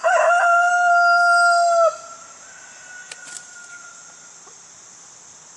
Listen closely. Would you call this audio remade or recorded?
recorded